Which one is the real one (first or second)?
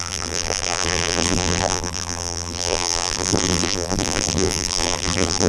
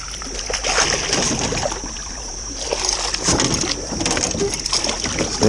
second